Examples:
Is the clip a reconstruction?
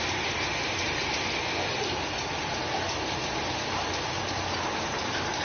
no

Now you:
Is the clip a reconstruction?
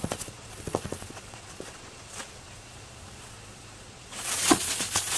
yes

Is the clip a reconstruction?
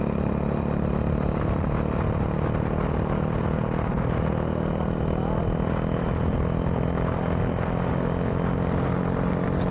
no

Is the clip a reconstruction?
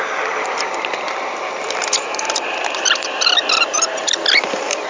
yes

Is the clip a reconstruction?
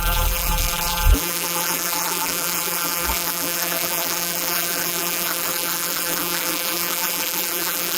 yes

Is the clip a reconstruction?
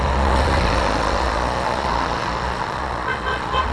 yes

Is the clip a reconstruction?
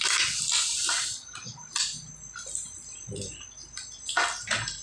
no